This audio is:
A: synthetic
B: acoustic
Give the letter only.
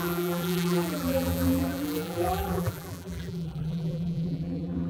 A